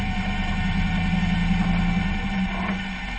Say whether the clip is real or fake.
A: real